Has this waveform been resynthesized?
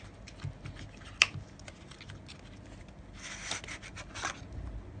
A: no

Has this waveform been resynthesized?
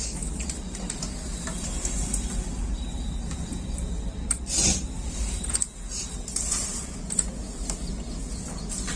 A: no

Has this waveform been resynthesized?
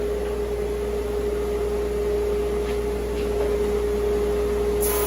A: no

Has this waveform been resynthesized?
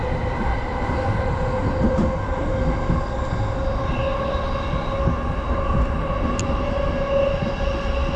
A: no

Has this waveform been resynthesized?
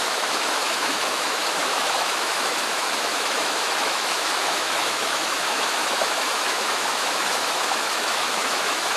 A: yes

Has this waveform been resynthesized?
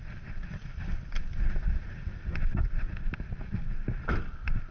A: no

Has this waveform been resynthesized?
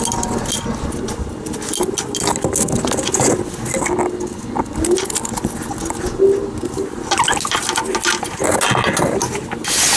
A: no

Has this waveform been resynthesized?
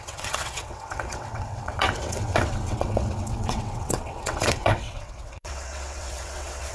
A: yes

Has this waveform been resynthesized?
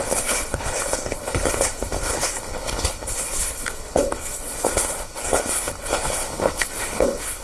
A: yes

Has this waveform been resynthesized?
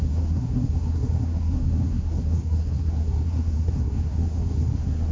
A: yes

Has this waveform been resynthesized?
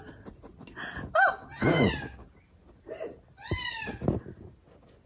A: no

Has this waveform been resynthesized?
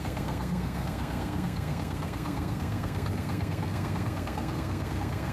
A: yes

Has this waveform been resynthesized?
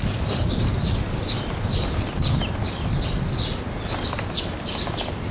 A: no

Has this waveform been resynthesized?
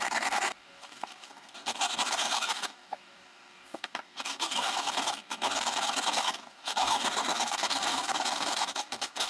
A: yes